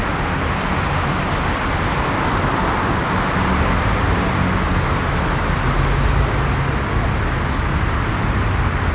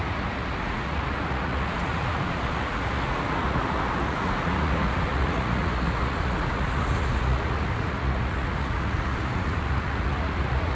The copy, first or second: second